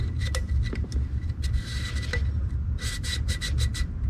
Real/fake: real